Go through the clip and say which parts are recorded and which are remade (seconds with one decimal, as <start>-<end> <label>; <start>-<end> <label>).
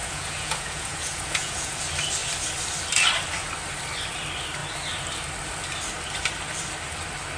0.0-1.8 remade; 1.8-7.4 recorded